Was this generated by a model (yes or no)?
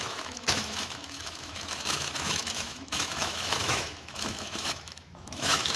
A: yes